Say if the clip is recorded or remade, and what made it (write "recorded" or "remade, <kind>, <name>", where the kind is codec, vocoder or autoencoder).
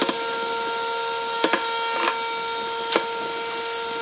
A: recorded